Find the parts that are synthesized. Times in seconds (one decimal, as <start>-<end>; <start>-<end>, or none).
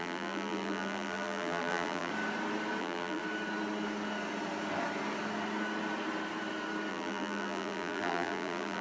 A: 0.0-2.1; 2.8-3.2; 6.9-8.8